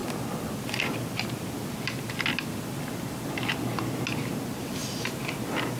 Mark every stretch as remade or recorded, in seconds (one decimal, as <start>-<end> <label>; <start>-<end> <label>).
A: 0.0-5.8 recorded